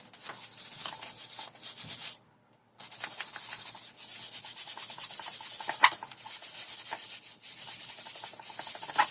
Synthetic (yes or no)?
no